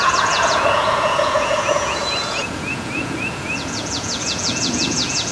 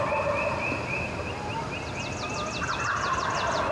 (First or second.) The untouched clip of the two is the second